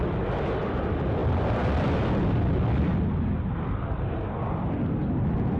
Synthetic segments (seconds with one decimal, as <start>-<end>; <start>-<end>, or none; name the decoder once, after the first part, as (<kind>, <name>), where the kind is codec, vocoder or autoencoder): none